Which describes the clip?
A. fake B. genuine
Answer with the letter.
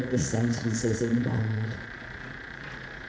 A